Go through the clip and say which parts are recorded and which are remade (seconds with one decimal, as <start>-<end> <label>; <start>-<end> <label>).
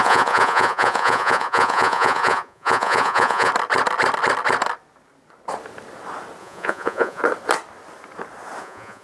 0.0-3.5 remade; 3.5-6.4 recorded; 6.4-7.2 remade; 7.2-8.6 recorded; 8.6-9.0 remade